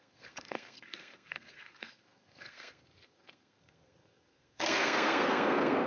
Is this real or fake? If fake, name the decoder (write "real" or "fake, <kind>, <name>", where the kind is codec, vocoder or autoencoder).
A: fake, codec, SNAC